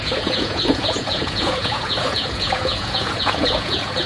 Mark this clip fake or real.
fake